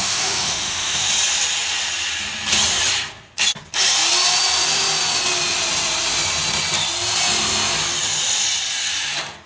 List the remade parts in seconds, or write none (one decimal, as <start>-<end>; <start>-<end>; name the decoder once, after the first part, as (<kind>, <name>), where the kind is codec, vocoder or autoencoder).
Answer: 0.0-1.1 (autoencoder, DAC-VAE)